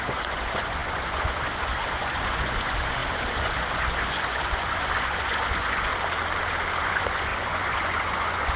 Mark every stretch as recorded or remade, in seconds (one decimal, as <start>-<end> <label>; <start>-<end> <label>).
0.0-5.9 remade; 5.9-6.8 recorded; 6.8-8.6 remade